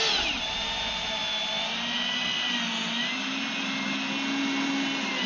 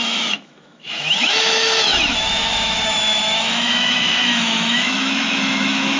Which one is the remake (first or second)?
second